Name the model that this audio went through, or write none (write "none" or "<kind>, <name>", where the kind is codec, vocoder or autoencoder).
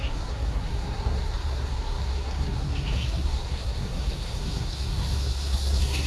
codec, SNAC